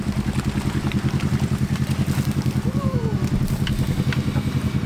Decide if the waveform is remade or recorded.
recorded